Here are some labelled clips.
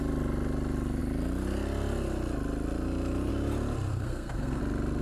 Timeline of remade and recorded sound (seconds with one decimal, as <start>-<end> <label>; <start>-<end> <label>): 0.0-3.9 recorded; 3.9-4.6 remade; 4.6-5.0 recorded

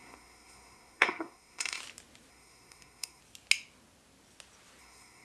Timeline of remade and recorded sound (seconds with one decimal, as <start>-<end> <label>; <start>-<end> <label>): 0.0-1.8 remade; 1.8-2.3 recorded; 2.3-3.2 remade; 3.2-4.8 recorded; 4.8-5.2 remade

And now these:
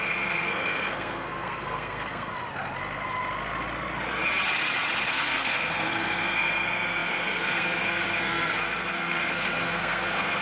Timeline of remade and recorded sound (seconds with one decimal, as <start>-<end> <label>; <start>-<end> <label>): 0.0-2.3 remade; 2.3-5.1 recorded; 5.1-10.4 remade